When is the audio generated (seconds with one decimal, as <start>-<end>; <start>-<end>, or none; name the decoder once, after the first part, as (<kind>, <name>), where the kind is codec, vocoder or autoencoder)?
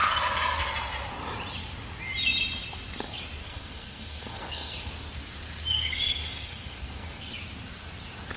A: 3.4-4.9 (codec, SNAC); 5.7-7.3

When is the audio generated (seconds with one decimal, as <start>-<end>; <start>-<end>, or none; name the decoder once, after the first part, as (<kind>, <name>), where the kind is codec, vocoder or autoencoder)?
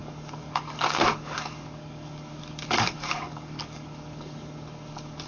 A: 0.0-5.3 (codec, DAC)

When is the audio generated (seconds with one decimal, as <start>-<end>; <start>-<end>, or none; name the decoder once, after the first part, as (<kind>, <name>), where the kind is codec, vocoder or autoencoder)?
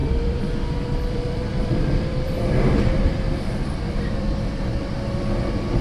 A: 0.0-5.8 (vocoder, BigVGAN v2)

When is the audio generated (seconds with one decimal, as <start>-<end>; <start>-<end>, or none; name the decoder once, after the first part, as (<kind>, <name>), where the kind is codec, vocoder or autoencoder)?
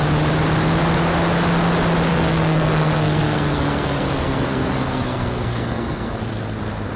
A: 2.1-6.2 (codec, SNAC)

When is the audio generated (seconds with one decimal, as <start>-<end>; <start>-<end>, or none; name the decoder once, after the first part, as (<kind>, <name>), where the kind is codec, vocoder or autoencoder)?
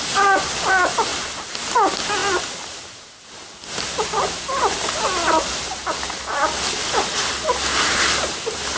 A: none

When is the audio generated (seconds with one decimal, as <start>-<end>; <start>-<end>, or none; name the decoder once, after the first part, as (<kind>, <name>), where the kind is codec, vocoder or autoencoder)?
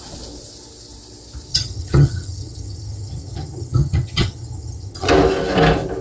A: 1.5-5.1 (vocoder, HiFi-GAN)